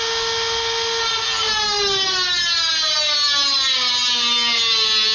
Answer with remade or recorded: recorded